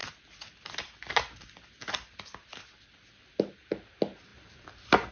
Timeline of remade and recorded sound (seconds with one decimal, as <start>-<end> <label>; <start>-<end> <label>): 0.0-5.1 recorded